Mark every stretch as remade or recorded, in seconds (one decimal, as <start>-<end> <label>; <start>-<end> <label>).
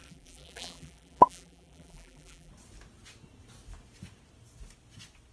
0.0-2.5 remade; 2.5-5.3 recorded